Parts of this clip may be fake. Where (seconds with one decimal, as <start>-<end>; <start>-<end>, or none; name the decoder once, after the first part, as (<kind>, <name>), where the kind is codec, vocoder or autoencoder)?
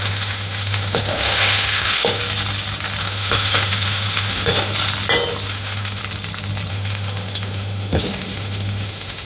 0.0-2.2 (autoencoder, DAC-VAE); 3.0-4.7; 5.5-6.0; 6.7-9.2